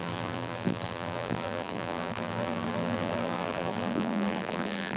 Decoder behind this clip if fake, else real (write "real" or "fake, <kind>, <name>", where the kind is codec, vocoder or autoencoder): fake, vocoder, BigVGAN v2